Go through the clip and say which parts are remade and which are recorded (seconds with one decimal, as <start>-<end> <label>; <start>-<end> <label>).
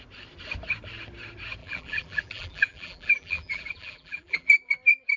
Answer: 0.0-1.6 recorded; 1.6-4.7 remade; 4.7-5.2 recorded